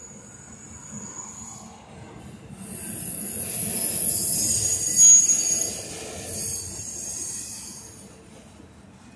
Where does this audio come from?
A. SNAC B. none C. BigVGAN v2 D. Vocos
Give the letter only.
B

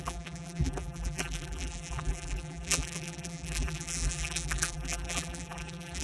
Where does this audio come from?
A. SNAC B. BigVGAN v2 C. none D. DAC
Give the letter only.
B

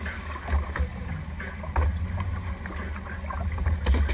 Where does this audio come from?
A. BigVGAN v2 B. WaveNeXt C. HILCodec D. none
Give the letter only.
D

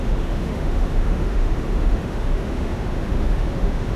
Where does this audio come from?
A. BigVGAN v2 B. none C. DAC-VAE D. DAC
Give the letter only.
C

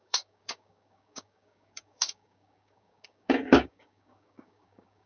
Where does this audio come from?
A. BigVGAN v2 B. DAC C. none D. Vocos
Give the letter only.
B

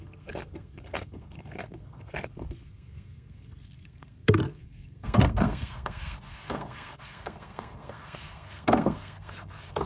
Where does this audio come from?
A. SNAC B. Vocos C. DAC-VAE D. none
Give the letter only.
A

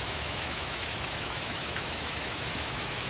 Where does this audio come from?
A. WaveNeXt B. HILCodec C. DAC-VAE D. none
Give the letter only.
C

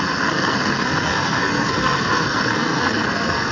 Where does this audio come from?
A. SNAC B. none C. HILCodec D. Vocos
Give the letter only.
A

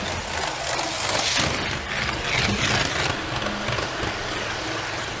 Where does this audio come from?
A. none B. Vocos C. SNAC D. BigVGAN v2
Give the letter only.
A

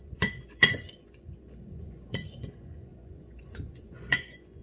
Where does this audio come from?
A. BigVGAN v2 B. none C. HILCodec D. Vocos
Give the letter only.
D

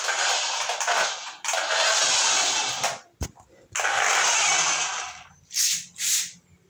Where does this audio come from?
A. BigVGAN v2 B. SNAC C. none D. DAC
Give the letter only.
C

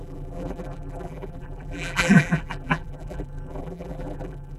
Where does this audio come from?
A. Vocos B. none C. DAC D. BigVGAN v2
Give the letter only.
D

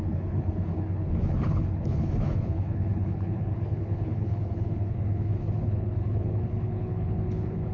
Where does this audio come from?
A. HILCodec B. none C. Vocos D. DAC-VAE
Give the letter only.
A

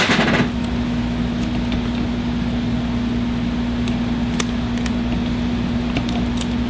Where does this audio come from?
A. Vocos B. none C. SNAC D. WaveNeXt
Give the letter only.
B